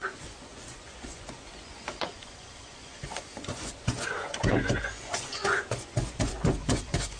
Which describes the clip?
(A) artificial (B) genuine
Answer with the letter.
A